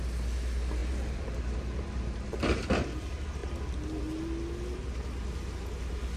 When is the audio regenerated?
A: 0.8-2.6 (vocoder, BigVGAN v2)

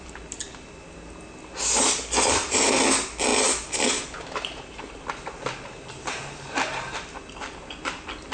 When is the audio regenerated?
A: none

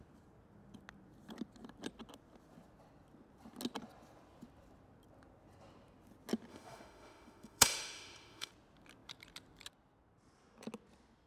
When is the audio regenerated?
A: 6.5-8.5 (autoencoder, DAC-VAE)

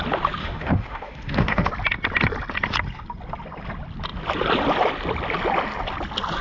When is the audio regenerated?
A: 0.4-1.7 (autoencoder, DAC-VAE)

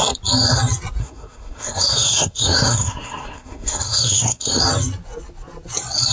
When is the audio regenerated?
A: 1.0-4.6 (codec, SNAC)